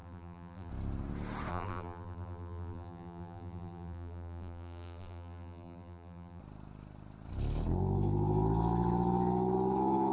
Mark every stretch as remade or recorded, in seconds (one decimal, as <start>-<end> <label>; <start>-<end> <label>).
0.0-0.7 remade; 0.7-1.5 recorded; 1.5-6.4 remade; 6.4-10.1 recorded